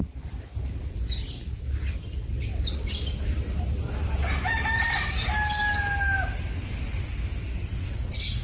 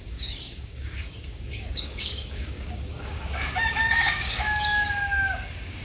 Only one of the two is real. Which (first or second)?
first